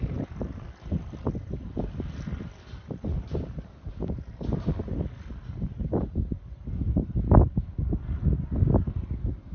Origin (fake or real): real